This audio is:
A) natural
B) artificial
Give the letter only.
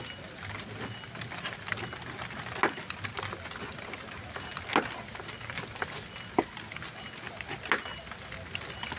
A